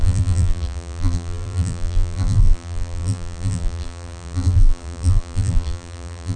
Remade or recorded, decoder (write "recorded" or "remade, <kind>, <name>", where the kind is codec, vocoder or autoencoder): remade, vocoder, BigVGAN v2